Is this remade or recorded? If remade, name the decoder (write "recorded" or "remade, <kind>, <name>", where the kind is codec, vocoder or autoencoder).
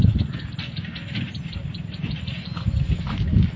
recorded